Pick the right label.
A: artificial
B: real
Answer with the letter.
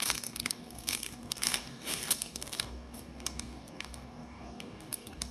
A